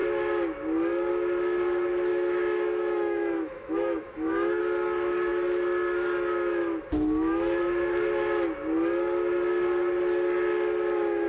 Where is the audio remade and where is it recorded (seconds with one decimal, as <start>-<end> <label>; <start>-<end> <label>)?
0.0-2.1 recorded; 2.1-4.6 remade; 4.6-11.3 recorded